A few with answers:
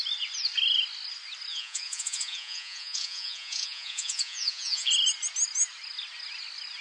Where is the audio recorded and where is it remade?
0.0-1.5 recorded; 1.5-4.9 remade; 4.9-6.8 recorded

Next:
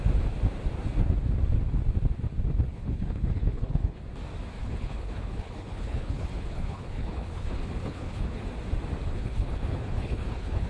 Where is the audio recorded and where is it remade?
0.0-2.7 recorded; 2.7-4.0 remade; 4.0-4.6 recorded; 4.6-8.4 remade; 8.4-9.1 recorded; 9.1-10.7 remade

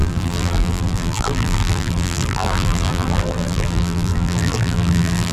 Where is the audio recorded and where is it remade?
0.0-5.3 remade